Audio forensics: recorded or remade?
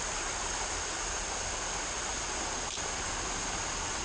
recorded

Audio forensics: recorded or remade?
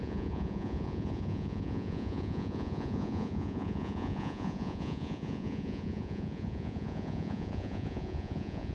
remade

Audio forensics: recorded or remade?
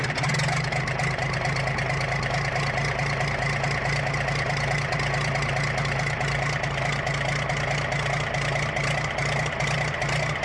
recorded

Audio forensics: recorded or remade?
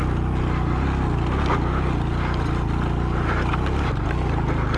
recorded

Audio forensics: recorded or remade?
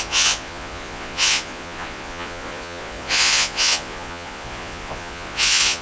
remade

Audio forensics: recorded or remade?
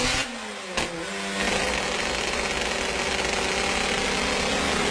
recorded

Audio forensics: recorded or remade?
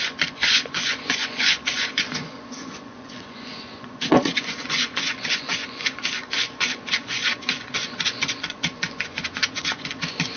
remade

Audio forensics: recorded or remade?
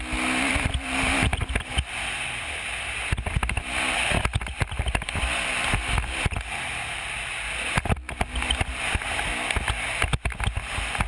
recorded